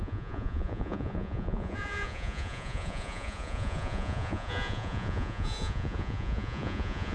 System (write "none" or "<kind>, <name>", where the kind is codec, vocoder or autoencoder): vocoder, Vocos